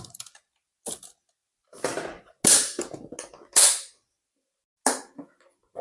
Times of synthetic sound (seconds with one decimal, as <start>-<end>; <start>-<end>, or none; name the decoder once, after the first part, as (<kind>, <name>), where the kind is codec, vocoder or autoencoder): none